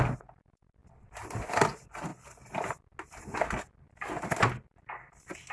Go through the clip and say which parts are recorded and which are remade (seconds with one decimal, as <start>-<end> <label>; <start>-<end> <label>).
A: 0.0-5.5 recorded